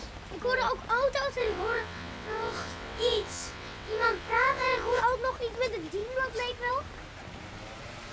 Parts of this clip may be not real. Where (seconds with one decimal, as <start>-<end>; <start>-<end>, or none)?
1.4-5.0

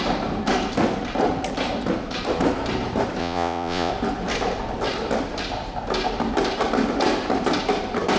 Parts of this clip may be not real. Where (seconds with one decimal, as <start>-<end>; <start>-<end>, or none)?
3.2-3.9

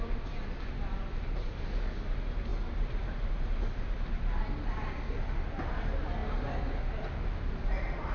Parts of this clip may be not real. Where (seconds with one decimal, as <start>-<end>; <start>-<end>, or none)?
none

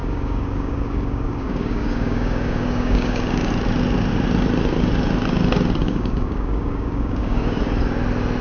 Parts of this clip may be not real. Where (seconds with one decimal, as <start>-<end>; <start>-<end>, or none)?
0.0-3.5; 5.8-7.6

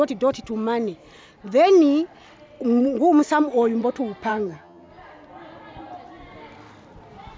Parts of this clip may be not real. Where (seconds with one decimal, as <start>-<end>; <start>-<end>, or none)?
4.3-4.9